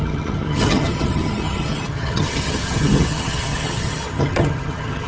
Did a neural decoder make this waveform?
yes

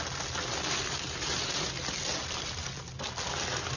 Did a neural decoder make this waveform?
no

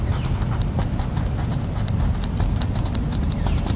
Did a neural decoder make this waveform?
no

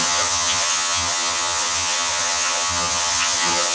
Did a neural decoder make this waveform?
yes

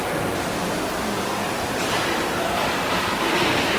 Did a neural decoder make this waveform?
no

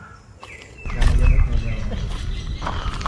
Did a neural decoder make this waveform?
no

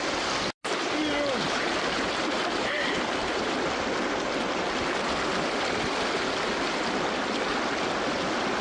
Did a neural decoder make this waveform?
no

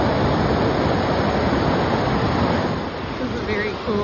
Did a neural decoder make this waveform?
no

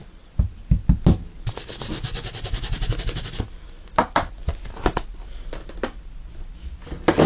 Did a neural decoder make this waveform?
no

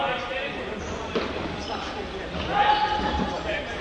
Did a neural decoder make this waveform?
no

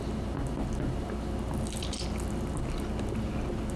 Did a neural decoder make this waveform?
no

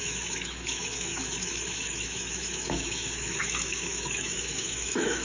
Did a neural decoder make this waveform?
yes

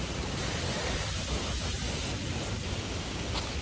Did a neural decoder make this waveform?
no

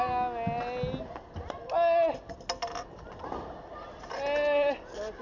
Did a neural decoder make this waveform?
no